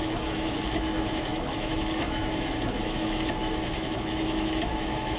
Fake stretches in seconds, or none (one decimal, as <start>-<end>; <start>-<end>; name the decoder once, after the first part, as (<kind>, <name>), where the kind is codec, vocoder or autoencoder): 0.0-5.2 (autoencoder, DAC-VAE)